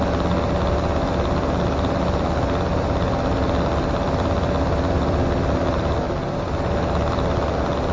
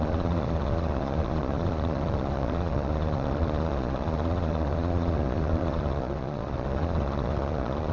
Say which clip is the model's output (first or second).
second